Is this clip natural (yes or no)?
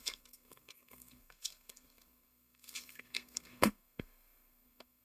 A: no